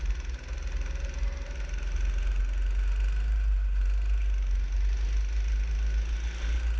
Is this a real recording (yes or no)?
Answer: yes